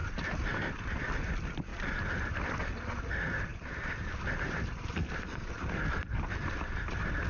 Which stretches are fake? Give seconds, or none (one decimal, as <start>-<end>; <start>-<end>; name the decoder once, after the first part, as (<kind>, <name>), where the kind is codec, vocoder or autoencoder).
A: 0.0-0.8 (vocoder, BigVGAN v2); 1.7-3.0; 3.5-7.3